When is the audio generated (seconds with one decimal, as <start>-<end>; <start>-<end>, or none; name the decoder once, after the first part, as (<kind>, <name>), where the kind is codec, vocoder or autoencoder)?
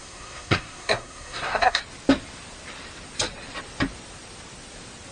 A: 0.0-1.8 (codec, SNAC)